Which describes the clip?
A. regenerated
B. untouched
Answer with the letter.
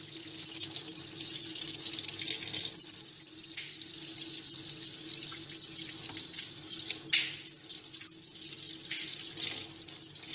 B